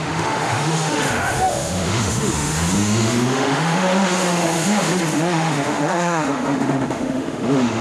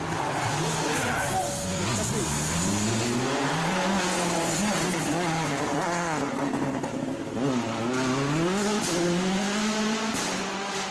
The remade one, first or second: first